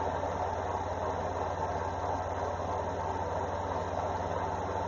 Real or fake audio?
real